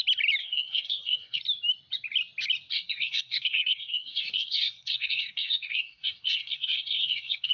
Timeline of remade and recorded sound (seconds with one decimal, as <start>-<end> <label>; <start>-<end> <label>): 0.0-0.4 recorded; 0.4-1.4 remade; 1.4-2.7 recorded; 2.7-7.5 remade